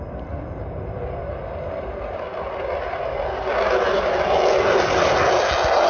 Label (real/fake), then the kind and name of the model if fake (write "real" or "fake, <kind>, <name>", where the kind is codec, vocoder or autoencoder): real